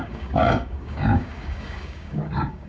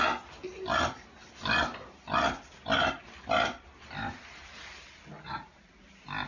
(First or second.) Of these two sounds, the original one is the second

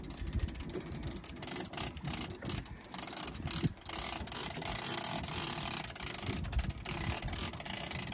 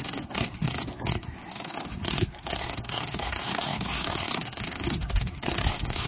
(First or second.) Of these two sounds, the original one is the first